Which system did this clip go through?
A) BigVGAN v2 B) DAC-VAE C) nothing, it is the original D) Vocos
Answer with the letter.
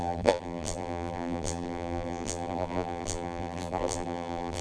A